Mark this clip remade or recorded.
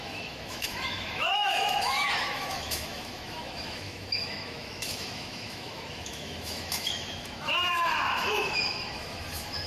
remade